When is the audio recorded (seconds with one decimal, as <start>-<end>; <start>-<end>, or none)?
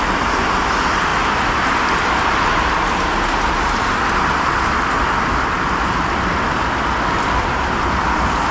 0.0-8.5